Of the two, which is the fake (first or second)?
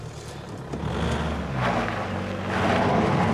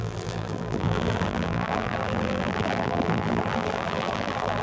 second